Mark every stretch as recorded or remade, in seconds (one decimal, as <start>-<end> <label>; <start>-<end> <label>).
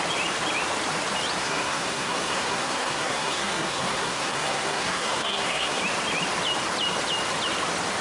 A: 0.0-1.4 recorded; 1.4-5.8 remade; 5.8-8.0 recorded